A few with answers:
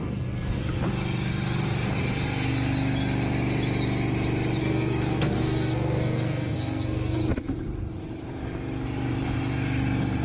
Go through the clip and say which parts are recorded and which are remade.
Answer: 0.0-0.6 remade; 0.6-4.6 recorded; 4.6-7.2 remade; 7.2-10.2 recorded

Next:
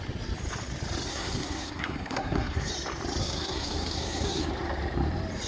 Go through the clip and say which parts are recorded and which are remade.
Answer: 0.0-1.1 recorded; 1.1-2.7 remade; 2.7-3.2 recorded; 3.2-4.5 remade; 4.5-5.5 recorded

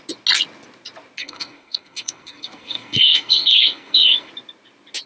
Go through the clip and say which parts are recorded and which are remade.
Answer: 0.0-1.2 recorded; 1.2-4.3 remade; 4.3-5.1 recorded

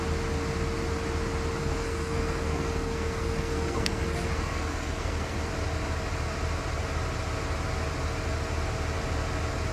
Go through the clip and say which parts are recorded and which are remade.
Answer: 0.0-1.6 recorded; 1.6-5.5 remade; 5.5-9.7 recorded